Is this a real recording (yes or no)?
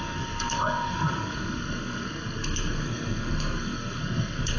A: no